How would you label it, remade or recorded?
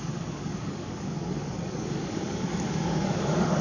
remade